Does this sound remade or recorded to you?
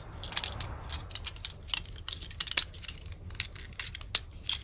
recorded